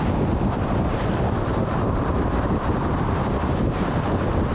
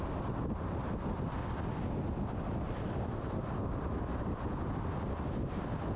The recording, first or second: second